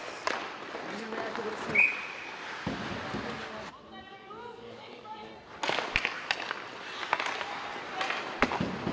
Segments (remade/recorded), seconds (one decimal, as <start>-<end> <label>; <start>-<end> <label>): 0.0-4.1 recorded; 4.1-5.3 remade; 5.3-8.9 recorded